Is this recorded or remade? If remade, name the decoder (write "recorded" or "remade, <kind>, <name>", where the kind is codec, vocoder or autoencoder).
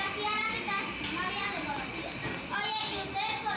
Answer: recorded